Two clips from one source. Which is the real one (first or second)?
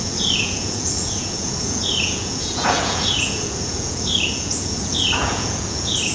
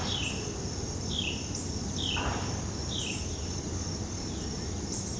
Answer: second